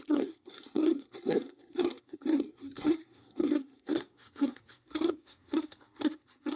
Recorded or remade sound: remade